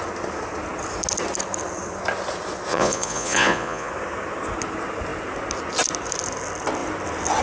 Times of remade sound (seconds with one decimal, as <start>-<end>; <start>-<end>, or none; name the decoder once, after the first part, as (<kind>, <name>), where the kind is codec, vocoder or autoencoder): 2.7-3.9 (vocoder, Vocos)

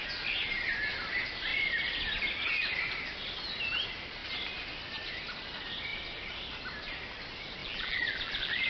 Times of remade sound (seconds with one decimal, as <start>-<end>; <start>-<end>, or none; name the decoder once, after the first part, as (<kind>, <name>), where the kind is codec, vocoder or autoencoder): 7.6-8.7 (vocoder, BigVGAN v2)

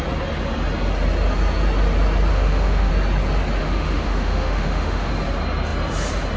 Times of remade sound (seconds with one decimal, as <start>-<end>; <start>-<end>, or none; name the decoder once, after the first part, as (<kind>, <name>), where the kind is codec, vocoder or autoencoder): 2.3-2.9 (autoencoder, DAC-VAE); 3.6-5.1

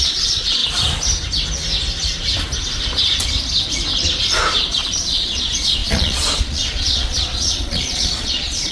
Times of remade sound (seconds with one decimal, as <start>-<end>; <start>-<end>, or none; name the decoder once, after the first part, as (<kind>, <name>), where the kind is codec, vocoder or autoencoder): 0.0-0.6 (vocoder, Vocos); 4.2-8.7

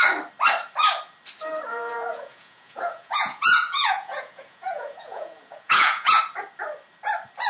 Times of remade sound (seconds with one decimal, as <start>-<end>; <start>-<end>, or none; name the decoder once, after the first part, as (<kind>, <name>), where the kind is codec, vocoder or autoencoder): 1.7-6.2 (vocoder, Vocos)

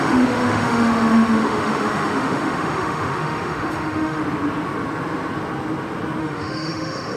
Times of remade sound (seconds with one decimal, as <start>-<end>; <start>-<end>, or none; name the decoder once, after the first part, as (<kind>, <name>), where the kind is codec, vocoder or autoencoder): 0.0-4.2 (autoencoder, DAC-VAE); 6.2-7.2

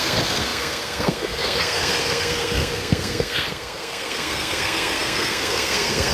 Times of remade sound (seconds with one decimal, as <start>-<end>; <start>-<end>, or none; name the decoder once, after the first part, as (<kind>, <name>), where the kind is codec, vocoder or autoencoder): 0.0-6.1 (codec, SNAC)

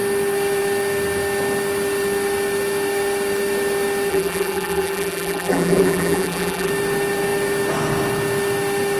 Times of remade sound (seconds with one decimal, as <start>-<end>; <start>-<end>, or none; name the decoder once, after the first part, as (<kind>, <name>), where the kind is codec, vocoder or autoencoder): 4.1-6.7 (vocoder, BigVGAN v2)